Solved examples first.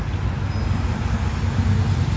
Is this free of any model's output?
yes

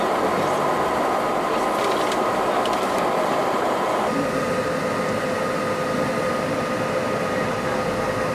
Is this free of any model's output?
yes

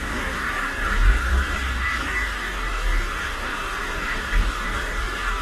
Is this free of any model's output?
no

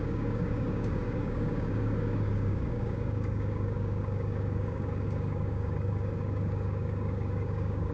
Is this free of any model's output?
no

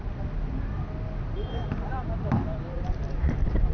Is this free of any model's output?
yes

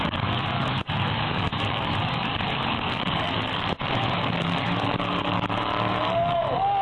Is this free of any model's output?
no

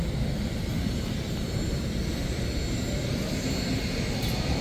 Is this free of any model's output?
yes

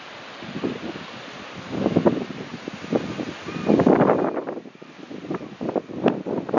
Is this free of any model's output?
yes